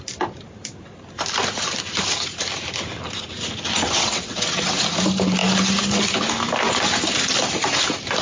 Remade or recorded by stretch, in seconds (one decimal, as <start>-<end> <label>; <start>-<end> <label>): 0.0-3.7 recorded; 3.7-4.7 remade; 4.7-8.2 recorded